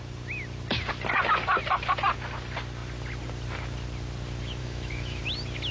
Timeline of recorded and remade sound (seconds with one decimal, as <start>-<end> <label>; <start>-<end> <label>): 0.0-4.6 recorded; 4.6-5.2 remade; 5.2-5.7 recorded